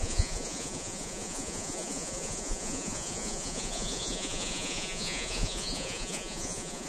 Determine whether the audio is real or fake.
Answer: fake